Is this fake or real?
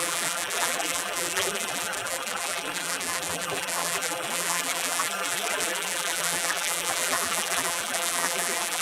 fake